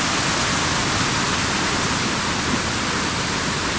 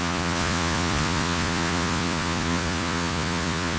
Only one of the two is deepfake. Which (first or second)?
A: second